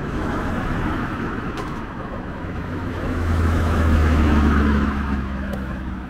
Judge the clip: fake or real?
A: fake